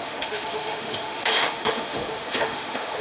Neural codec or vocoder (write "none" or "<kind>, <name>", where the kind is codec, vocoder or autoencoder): autoencoder, DAC-VAE